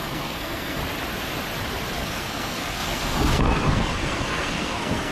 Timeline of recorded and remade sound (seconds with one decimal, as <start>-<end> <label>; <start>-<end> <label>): 0.0-0.8 remade; 0.8-2.0 recorded; 2.0-5.1 remade